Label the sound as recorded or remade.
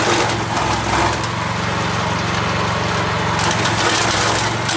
recorded